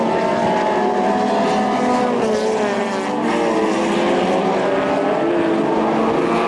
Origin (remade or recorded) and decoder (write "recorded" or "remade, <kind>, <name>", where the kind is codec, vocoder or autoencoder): recorded